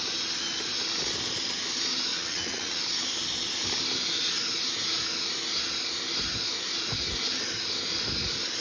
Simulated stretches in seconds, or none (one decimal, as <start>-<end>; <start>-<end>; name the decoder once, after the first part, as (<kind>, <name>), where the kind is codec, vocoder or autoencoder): 2.1-2.8 (vocoder, Vocos)